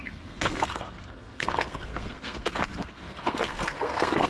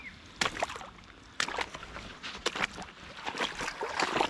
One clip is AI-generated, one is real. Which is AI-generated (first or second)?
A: first